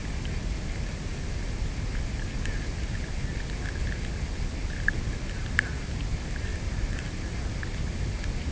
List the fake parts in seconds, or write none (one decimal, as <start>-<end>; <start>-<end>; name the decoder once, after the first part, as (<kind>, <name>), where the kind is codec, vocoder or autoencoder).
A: none